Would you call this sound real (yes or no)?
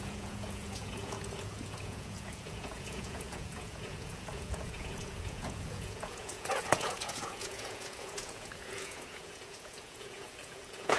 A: no